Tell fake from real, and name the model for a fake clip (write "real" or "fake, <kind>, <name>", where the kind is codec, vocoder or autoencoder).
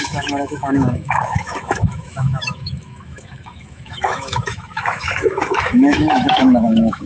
fake, autoencoder, DAC-VAE